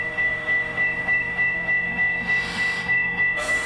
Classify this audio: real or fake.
fake